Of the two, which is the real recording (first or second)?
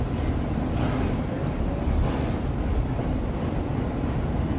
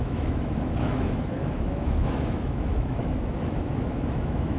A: first